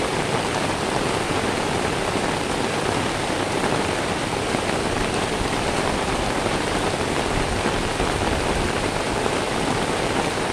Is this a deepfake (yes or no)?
yes